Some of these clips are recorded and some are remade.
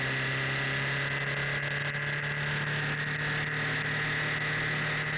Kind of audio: recorded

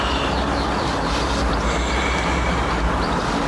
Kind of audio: recorded